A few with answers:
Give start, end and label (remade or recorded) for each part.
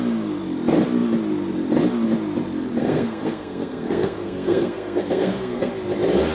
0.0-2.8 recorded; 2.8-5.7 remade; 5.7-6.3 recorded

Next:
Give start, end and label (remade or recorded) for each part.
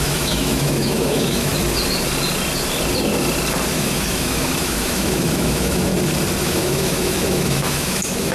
0.0-1.5 remade; 1.5-3.7 recorded; 3.7-5.9 remade; 5.9-6.4 recorded; 6.4-8.3 remade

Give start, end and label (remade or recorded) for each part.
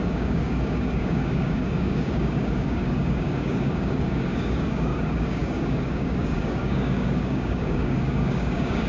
0.0-8.9 remade